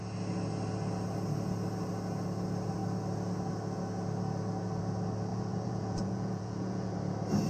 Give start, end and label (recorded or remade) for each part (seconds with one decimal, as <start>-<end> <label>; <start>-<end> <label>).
0.0-5.3 recorded; 5.3-6.9 remade; 6.9-7.5 recorded

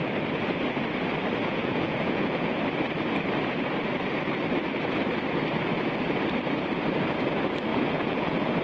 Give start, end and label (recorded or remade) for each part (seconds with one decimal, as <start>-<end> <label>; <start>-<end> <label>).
0.0-1.4 recorded; 1.4-2.6 remade; 2.6-7.7 recorded; 7.7-8.6 remade

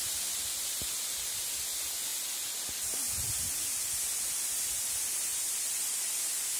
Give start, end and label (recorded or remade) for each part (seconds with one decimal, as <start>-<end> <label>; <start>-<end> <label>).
0.0-6.6 recorded

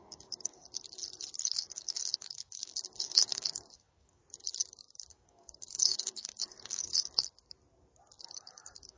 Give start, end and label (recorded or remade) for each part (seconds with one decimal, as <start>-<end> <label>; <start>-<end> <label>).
0.0-1.0 remade; 1.0-1.6 recorded; 1.6-4.2 remade; 4.2-4.7 recorded; 4.7-6.9 remade; 6.9-8.2 recorded; 8.2-9.0 remade

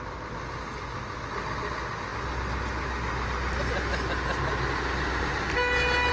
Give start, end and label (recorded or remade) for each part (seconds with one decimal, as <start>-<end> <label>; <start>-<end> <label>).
0.0-6.1 recorded

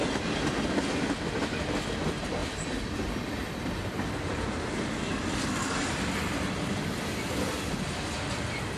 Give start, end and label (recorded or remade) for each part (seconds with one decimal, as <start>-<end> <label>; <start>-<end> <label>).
0.0-8.8 recorded

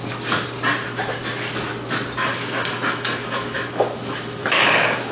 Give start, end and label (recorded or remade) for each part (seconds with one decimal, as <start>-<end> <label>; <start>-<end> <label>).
0.0-2.2 recorded; 2.2-5.1 remade

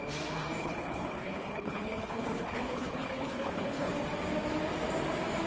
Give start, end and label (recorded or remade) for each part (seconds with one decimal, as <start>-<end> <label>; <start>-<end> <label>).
0.0-0.6 recorded; 0.6-3.9 remade; 3.9-5.5 recorded